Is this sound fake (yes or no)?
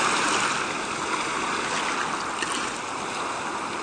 no